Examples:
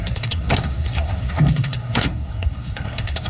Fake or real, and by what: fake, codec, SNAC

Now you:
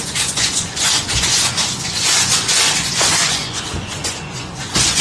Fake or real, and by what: fake, vocoder, Vocos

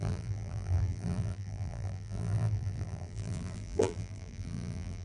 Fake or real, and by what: fake, vocoder, BigVGAN v2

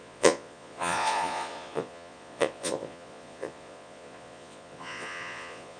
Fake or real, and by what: fake, vocoder, Vocos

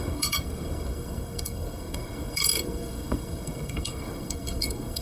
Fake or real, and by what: fake, codec, SNAC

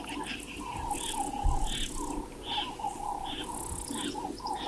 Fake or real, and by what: real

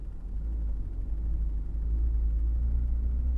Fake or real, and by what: real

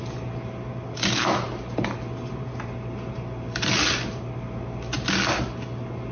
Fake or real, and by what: real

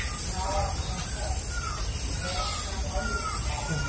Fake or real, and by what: real